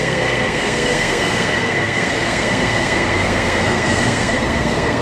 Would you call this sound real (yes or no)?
no